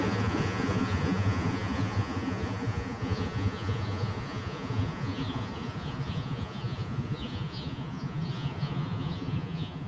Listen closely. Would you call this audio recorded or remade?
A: remade